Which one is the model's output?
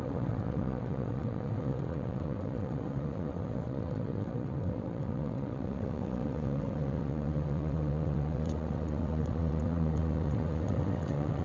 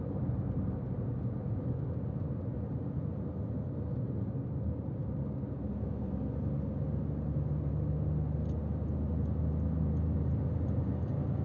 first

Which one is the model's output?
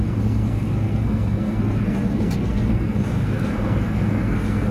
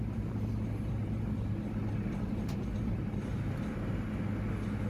first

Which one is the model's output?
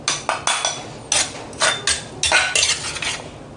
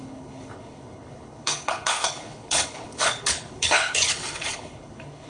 second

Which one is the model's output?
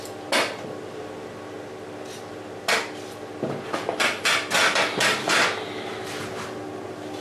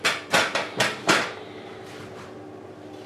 second